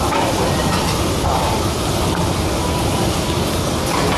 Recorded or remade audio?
recorded